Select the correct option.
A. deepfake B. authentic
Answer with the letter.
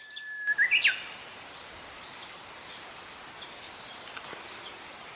B